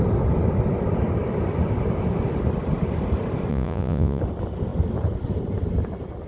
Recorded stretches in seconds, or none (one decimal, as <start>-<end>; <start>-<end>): 0.0-3.5; 4.2-6.3